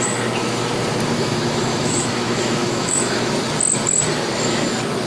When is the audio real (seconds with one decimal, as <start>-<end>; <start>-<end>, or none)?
0.0-1.1; 3.3-5.1